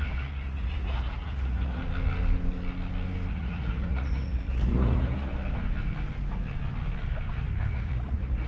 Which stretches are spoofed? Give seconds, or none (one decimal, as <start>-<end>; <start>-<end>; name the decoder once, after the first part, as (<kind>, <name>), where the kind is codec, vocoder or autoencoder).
0.0-1.8 (vocoder, Vocos); 3.3-5.3; 7.7-8.5